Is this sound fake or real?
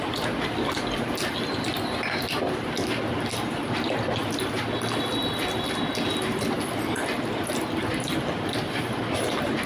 real